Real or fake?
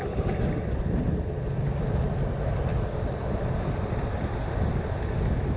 real